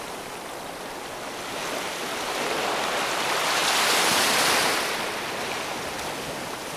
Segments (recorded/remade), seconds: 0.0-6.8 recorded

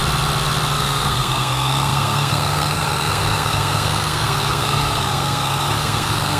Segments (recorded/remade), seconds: 0.0-0.8 recorded; 0.8-6.4 remade

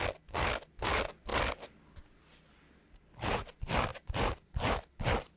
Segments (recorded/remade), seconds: 0.0-5.4 recorded

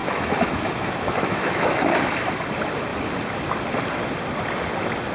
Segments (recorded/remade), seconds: 0.0-2.0 remade; 2.0-5.1 recorded